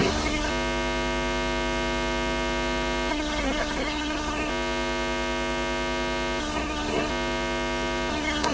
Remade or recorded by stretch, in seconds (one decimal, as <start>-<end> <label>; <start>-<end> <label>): 0.0-0.5 remade; 0.5-3.1 recorded; 3.1-4.5 remade; 4.5-6.4 recorded; 6.4-7.1 remade; 7.1-8.1 recorded; 8.1-8.5 remade